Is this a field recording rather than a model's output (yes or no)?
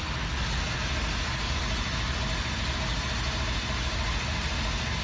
yes